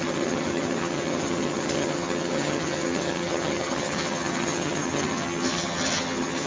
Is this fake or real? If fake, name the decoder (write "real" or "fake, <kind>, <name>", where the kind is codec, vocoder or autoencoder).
fake, vocoder, HiFi-GAN